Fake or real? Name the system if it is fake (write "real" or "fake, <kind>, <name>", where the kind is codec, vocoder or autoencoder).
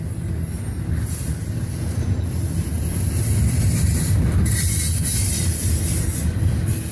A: real